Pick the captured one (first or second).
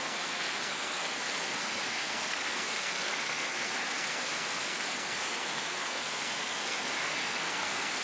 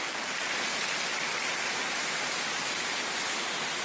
second